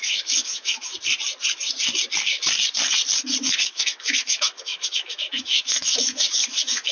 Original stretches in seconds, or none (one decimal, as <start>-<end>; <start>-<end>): 0.9-3.4